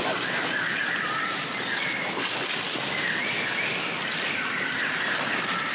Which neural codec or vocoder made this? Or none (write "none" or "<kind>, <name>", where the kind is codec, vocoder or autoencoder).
none